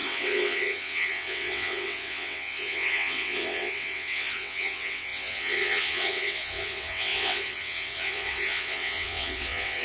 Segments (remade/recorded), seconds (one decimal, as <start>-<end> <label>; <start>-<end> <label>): 0.0-9.8 remade